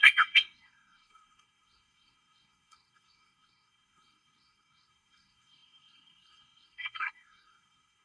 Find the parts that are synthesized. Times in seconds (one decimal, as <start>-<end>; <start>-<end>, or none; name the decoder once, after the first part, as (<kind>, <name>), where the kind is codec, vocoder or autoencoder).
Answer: 0.0-8.0 (codec, SNAC)